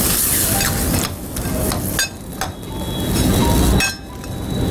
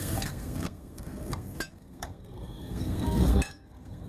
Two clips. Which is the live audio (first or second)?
first